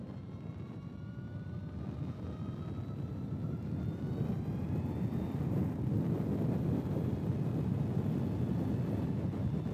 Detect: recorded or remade recorded